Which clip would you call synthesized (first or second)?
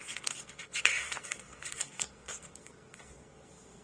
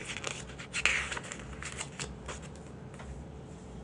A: first